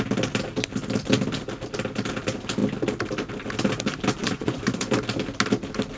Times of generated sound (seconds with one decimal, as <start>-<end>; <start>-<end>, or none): 4.2-4.9